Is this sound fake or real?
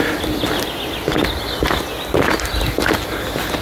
real